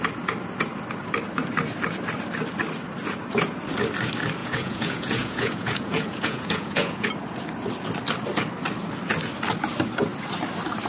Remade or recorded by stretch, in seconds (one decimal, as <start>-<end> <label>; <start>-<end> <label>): 0.0-4.4 recorded; 4.4-7.1 remade; 7.1-10.9 recorded